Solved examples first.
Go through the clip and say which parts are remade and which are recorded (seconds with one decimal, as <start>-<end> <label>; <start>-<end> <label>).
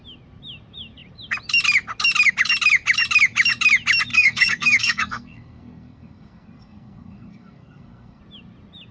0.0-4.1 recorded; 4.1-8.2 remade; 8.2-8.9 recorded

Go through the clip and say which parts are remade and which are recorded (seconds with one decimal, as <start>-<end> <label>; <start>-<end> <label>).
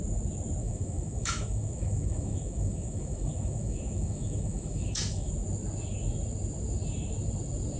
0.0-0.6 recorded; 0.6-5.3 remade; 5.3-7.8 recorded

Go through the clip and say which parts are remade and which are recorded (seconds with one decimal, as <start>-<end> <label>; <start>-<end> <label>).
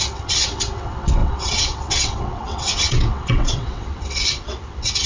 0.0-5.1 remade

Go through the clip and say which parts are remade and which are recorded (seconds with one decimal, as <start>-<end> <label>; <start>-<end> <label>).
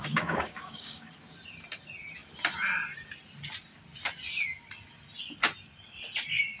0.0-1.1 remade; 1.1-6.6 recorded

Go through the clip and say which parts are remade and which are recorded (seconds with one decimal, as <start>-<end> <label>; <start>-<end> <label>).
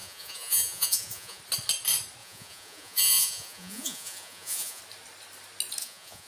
0.0-1.4 remade; 1.4-2.2 recorded; 2.2-4.8 remade; 4.8-5.8 recorded; 5.8-6.3 remade